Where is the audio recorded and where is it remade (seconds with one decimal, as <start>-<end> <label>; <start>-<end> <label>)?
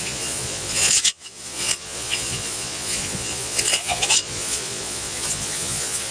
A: 0.0-6.1 remade